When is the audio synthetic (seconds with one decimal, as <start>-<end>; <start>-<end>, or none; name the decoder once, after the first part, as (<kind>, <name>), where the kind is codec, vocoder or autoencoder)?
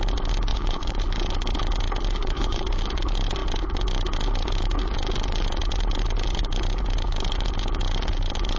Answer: 0.5-1.0 (vocoder, Vocos); 2.2-2.7